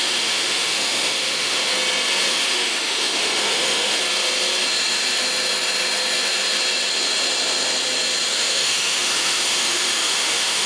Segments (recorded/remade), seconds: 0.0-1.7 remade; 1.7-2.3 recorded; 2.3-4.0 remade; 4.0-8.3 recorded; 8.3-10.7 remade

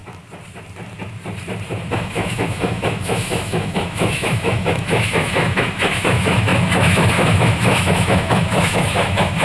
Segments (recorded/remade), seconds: 0.0-1.9 recorded; 1.9-9.4 remade